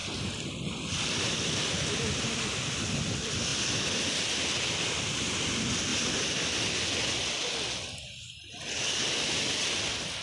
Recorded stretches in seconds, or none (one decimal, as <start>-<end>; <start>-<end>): 0.0-10.2